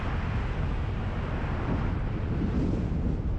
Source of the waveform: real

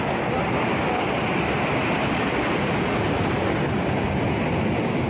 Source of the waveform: real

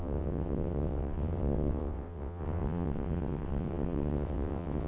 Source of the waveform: fake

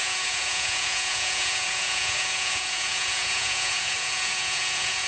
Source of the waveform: fake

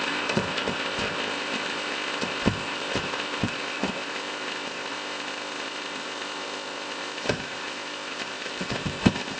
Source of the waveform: fake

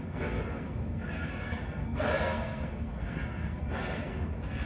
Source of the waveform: fake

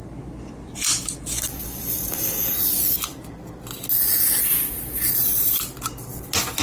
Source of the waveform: real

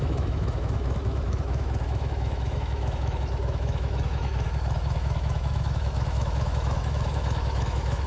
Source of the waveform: fake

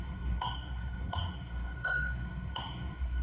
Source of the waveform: fake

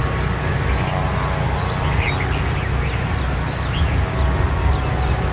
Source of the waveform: real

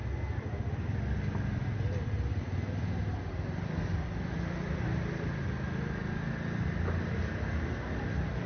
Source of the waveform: real